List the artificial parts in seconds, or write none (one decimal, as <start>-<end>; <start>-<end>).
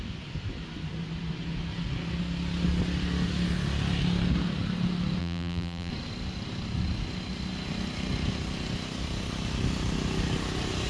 5.2-5.9